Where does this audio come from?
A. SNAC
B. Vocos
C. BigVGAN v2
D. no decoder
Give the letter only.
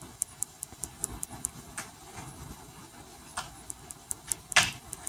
D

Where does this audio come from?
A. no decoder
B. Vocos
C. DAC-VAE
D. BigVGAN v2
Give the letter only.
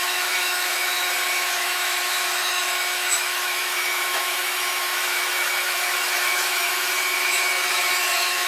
C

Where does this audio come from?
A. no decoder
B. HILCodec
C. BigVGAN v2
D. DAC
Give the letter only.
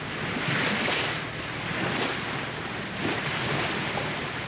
A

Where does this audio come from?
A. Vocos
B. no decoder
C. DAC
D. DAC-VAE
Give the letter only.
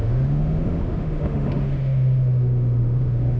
D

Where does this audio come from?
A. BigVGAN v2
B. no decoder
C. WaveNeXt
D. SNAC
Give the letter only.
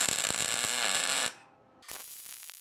A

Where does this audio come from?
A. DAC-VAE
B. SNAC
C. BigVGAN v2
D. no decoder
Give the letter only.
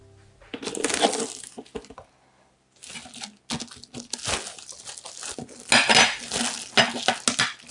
D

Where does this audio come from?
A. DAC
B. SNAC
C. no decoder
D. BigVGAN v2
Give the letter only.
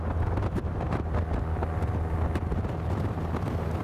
C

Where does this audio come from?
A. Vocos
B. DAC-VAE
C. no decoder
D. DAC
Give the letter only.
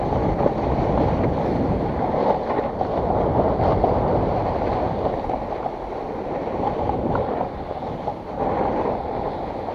C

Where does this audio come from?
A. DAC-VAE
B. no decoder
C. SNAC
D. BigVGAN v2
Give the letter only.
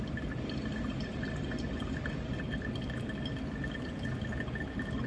B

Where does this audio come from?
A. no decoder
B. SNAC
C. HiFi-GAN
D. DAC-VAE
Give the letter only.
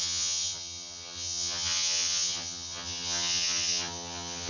C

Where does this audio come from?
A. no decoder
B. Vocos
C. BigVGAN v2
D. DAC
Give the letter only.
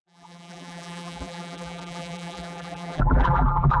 C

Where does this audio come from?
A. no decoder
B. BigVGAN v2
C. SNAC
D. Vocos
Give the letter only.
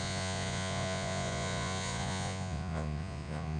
D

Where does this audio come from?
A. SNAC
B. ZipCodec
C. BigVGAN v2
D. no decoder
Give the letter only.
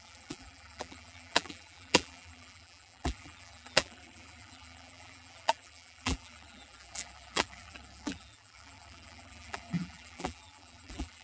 C